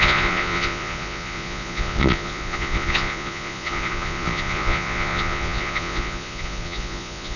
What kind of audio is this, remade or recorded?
remade